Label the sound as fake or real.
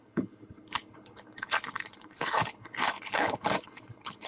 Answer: fake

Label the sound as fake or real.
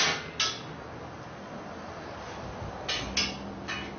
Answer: real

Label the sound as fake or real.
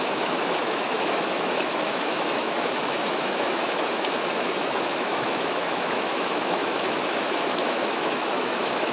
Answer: fake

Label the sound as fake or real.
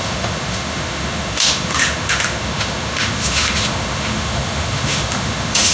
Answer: fake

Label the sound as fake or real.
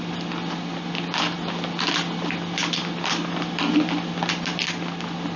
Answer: real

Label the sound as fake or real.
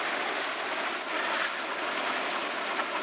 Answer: real